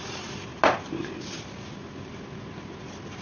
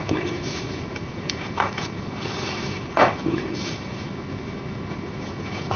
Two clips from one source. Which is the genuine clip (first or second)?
first